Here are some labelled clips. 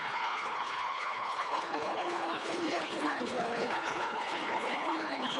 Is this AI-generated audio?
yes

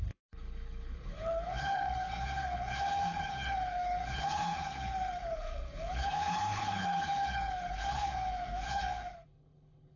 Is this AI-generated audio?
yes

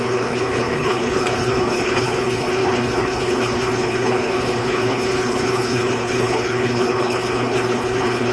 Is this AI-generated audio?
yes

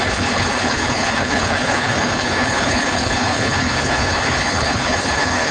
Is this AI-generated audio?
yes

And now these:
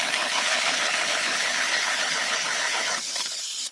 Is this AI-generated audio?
yes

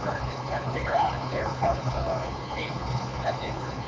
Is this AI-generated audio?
yes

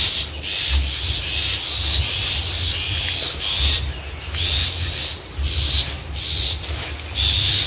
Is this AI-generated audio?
no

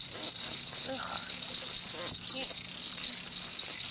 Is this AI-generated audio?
no